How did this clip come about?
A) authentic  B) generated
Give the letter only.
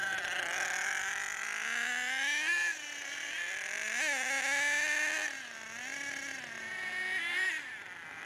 A